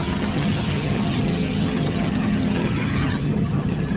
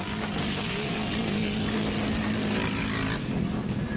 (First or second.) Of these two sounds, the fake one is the first